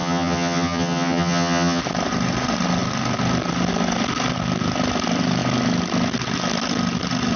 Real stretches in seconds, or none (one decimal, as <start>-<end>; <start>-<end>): 1.8-7.4